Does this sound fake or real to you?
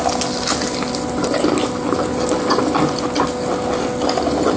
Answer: real